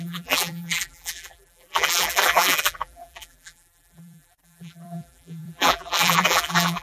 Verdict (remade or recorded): remade